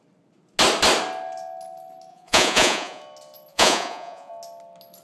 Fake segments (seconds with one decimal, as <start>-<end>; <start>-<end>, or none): 2.1-3.0; 3.5-4.3